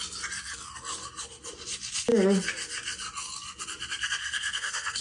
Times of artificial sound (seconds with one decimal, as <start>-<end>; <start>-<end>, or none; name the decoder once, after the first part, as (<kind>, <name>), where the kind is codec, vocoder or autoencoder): 4.2-5.0 (codec, SNAC)